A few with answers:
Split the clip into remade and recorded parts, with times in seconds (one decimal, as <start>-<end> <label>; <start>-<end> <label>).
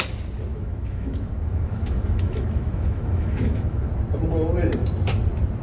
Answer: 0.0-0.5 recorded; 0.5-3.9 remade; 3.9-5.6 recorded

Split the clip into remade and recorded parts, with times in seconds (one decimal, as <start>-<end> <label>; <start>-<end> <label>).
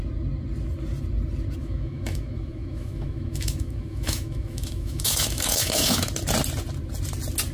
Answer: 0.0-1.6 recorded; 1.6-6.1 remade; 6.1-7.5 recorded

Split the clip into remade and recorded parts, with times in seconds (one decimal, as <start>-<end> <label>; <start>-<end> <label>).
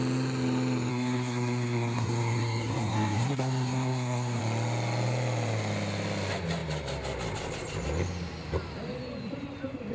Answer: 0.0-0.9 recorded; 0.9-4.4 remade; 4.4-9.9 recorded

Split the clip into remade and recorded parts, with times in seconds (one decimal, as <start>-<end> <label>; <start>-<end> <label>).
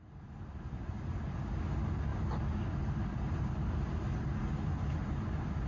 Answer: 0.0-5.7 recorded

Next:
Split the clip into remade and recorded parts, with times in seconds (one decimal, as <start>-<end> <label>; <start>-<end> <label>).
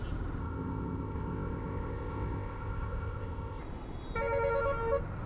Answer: 0.0-0.4 recorded; 0.4-3.6 remade; 3.6-5.3 recorded